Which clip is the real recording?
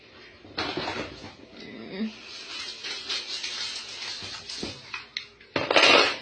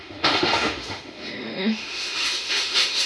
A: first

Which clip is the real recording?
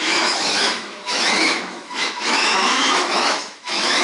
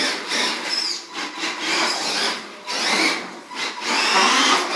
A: second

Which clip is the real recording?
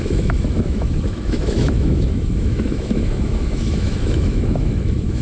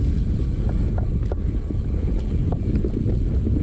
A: second